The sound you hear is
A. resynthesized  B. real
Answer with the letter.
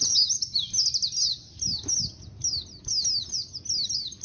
B